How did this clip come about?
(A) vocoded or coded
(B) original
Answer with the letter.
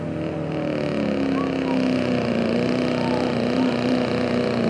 B